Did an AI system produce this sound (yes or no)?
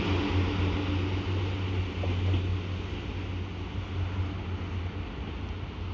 no